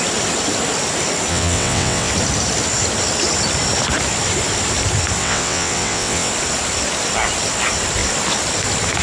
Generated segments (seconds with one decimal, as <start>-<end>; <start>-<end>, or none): 1.3-2.1; 5.2-6.3